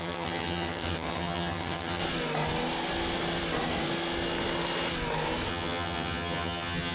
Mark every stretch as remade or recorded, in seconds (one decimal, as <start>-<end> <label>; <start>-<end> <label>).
0.0-2.0 remade; 2.0-5.5 recorded; 5.5-6.9 remade